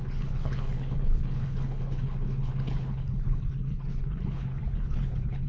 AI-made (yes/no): yes